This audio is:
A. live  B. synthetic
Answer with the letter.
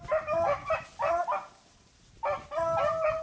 A